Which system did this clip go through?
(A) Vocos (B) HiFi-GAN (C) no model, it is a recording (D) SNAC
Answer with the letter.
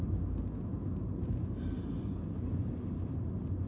C